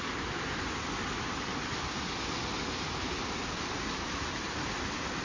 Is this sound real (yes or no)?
yes